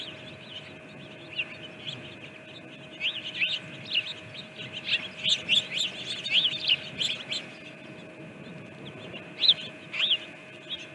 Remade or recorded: recorded